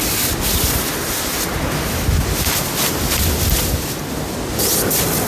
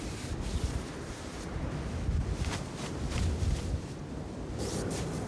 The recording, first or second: first